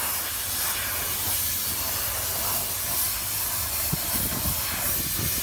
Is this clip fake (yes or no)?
no